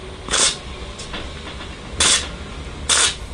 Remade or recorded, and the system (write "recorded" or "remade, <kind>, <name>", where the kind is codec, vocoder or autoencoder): recorded